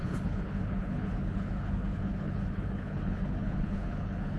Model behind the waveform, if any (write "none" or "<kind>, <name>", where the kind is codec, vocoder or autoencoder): codec, HILCodec